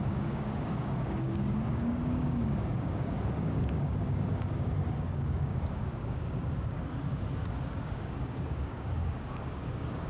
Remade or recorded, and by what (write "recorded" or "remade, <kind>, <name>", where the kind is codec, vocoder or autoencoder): remade, codec, DAC